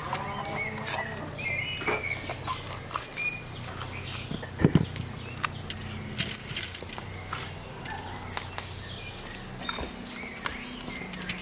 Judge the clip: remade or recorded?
recorded